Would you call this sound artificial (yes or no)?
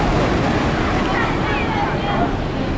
no